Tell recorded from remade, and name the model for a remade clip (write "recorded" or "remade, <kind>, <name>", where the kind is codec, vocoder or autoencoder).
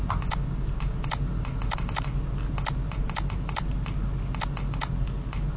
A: recorded